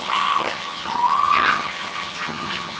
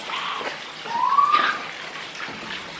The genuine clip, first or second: second